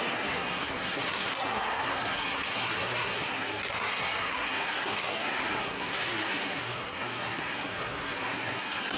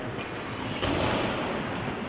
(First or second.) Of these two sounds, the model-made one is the first